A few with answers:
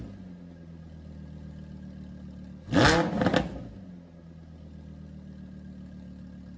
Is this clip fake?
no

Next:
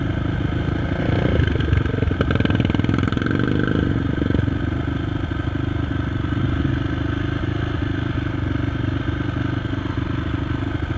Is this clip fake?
no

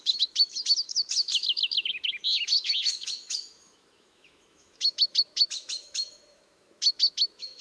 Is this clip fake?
yes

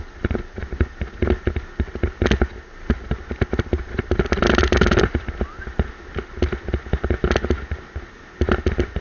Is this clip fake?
no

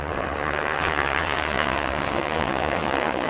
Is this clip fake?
yes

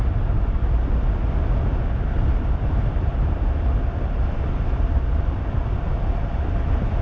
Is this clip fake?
no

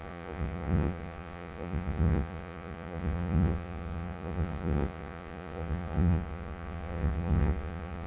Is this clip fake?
yes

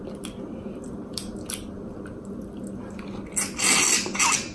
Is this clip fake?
no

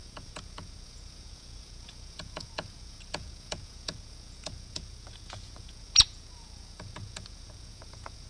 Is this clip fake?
yes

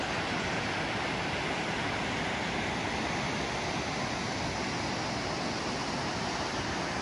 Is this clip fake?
no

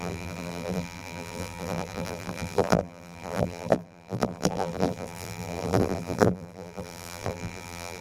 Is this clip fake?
yes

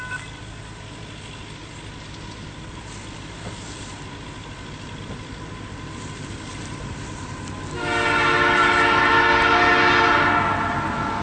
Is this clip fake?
no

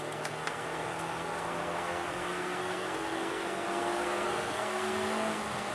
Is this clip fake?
yes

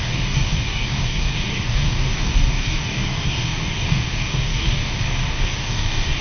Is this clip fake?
yes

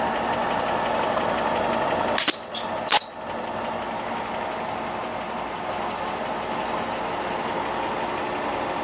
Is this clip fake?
no